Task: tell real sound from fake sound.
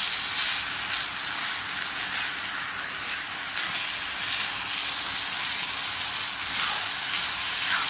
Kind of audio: real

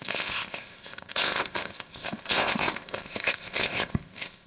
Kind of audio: fake